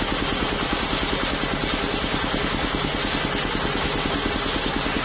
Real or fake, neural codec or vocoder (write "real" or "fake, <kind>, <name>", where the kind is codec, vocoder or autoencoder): real